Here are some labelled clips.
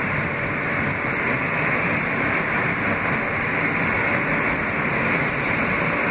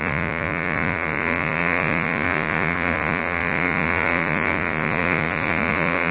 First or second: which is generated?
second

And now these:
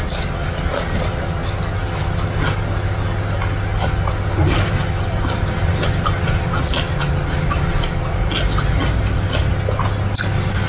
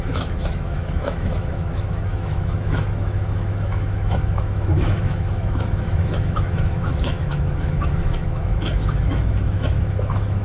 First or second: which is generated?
second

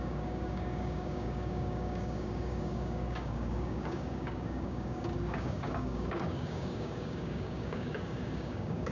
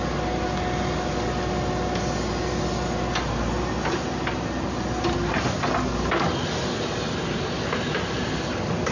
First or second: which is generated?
first